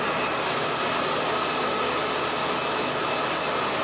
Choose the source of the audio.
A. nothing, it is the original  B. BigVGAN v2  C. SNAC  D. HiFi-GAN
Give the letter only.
A